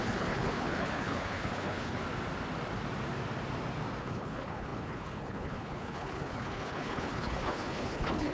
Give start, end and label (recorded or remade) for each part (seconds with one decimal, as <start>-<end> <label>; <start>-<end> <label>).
0.0-2.0 remade; 2.0-4.0 recorded; 4.0-8.3 remade